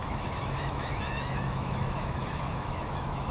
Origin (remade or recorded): remade